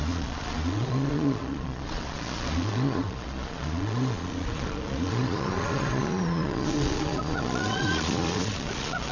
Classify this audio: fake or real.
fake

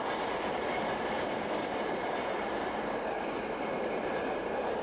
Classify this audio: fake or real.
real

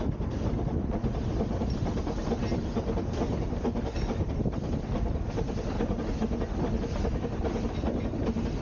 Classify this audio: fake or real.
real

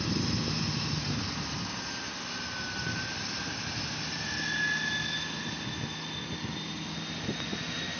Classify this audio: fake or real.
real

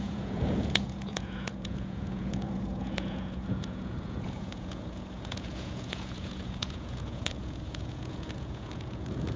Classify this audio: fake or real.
fake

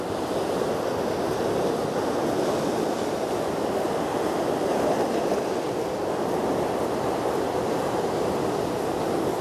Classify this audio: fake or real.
real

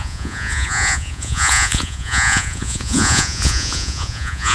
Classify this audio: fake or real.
fake